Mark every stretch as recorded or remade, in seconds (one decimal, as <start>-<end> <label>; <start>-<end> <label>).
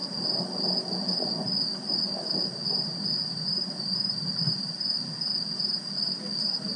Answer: 0.0-0.6 recorded; 0.6-6.8 remade